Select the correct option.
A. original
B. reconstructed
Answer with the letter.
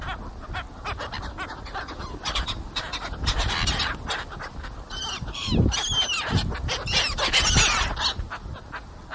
A